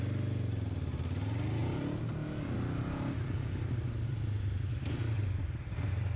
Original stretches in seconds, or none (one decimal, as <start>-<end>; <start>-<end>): 0.0-6.2